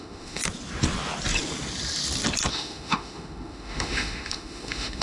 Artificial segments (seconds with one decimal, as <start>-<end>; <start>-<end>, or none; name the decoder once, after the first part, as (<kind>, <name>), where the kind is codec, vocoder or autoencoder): 0.0-0.4 (autoencoder, DAC-VAE); 2.5-5.0